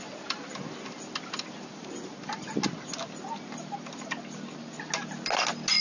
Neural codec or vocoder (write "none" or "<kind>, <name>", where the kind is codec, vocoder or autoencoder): none